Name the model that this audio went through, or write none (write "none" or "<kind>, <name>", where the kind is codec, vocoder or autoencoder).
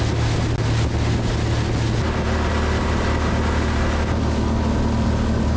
none